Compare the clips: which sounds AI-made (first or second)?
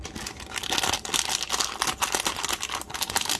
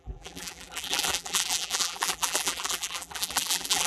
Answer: second